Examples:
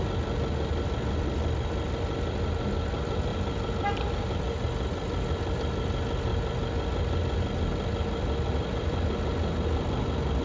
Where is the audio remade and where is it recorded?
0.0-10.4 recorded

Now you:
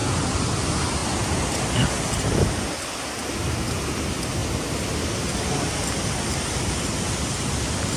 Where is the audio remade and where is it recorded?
0.0-8.0 recorded

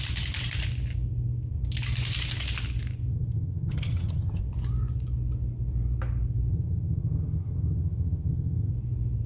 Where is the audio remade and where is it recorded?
0.0-3.1 recorded; 3.1-4.4 remade; 4.4-6.5 recorded; 6.5-8.7 remade; 8.7-9.3 recorded

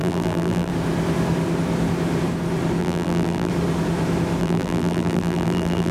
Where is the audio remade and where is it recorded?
0.0-0.7 remade; 0.7-2.8 recorded; 2.8-3.5 remade; 3.5-4.4 recorded; 4.4-5.9 remade

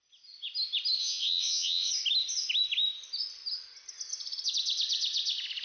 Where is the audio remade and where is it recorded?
0.0-1.0 recorded; 1.0-1.9 remade; 1.9-5.6 recorded

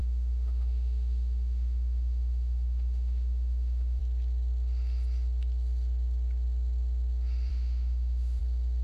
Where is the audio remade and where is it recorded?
0.0-4.0 remade; 4.0-7.5 recorded; 7.5-8.4 remade; 8.4-8.8 recorded

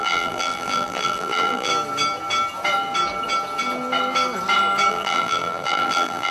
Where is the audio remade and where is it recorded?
0.0-1.7 remade; 1.7-4.9 recorded; 4.9-6.3 remade